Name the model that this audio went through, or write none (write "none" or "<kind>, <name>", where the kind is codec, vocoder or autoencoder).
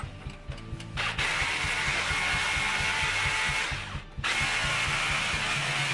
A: none